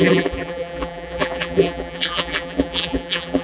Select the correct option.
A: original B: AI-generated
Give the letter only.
B